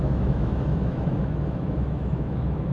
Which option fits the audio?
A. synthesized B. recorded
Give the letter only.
A